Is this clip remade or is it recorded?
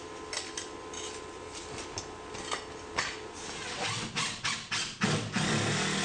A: recorded